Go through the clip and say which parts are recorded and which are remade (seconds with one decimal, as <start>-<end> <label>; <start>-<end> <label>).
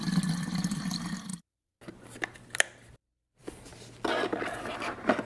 0.0-1.3 remade; 1.3-1.9 recorded; 1.9-3.7 remade; 3.7-4.4 recorded; 4.4-5.3 remade